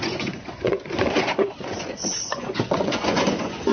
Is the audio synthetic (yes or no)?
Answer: yes